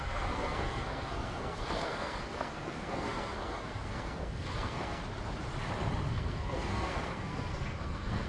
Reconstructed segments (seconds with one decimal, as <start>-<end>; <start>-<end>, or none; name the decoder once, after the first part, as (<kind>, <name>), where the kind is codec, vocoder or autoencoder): 0.0-5.0 (codec, SNAC); 6.1-8.3